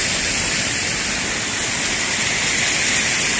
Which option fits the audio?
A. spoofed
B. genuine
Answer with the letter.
B